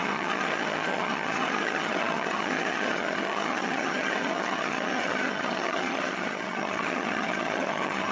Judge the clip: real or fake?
fake